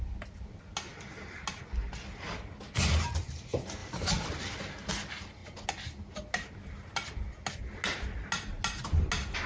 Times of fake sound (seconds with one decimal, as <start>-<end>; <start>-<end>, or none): 3.8-4.9

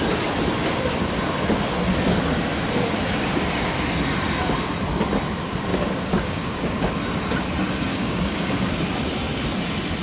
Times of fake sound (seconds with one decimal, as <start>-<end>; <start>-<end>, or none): 5.7-6.9; 7.9-8.7

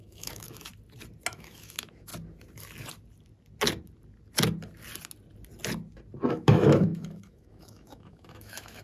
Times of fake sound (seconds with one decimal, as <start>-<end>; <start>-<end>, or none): 0.0-0.7; 1.3-2.1; 6.3-8.8

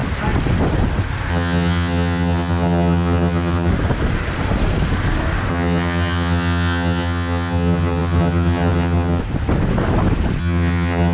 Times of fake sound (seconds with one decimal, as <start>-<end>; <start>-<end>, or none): 1.3-3.7; 5.5-9.2; 10.4-11.1